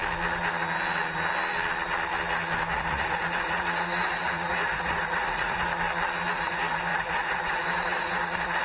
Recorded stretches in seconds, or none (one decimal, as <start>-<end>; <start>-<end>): 0.0-2.7; 5.7-6.3